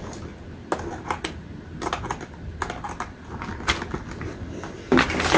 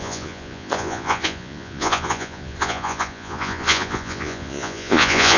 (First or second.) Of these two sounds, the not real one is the second